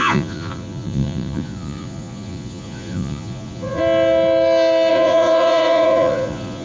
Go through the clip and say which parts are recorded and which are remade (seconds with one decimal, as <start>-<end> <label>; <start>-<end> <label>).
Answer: 0.0-3.8 remade; 3.8-4.9 recorded; 4.9-6.6 remade